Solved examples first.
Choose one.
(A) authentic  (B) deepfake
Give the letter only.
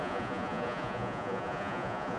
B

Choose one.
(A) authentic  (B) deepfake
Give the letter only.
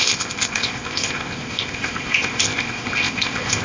B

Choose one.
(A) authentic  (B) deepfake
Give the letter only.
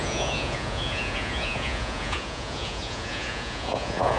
B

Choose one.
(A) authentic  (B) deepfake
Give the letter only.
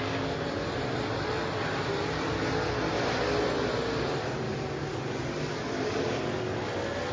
A